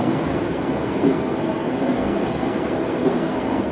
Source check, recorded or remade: remade